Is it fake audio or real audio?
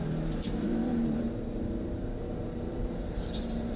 fake